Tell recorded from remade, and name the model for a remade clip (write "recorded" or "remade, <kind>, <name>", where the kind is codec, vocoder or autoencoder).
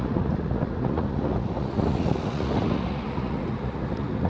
remade, vocoder, Vocos